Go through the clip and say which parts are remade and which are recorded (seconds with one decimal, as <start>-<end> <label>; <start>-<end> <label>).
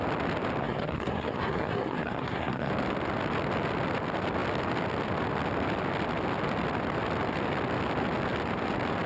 0.0-0.6 recorded; 0.6-2.7 remade; 2.7-9.1 recorded